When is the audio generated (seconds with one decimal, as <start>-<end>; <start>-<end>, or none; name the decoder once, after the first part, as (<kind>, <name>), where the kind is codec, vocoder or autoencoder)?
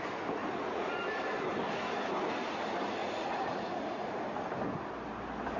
0.4-1.0 (vocoder, Vocos); 3.0-4.1